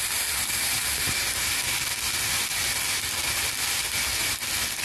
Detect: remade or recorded recorded